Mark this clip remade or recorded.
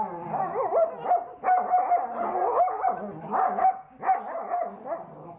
recorded